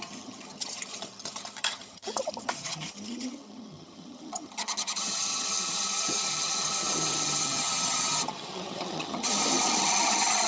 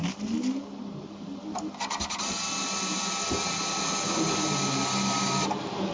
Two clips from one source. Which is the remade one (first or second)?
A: first